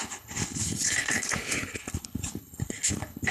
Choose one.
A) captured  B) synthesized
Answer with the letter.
B